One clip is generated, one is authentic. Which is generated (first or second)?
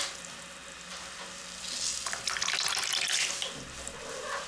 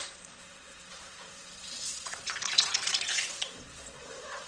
second